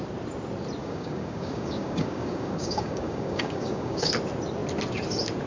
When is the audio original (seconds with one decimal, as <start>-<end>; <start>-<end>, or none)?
0.0-0.8; 4.1-5.5